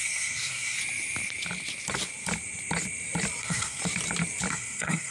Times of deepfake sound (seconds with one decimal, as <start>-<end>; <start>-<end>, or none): 0.0-0.8; 3.4-3.8; 4.5-5.1